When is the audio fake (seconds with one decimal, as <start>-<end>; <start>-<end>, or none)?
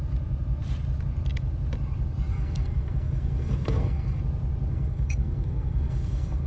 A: 2.3-4.2; 4.7-6.5